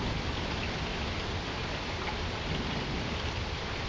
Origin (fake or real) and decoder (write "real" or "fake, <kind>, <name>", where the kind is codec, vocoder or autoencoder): real